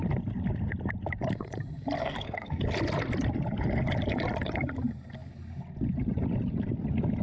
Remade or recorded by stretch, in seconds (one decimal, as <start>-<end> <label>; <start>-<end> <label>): 0.0-2.0 recorded; 2.0-2.6 remade; 2.6-7.2 recorded